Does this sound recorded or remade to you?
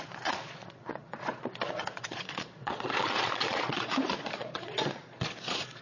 remade